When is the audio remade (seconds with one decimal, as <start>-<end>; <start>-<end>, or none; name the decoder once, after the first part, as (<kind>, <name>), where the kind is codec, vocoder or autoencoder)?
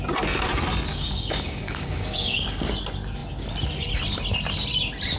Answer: 0.9-2.7 (codec, DAC)